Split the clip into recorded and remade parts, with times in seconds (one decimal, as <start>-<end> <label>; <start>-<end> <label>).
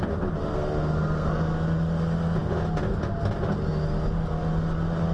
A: 0.0-0.5 recorded; 0.5-1.4 remade; 1.4-5.1 recorded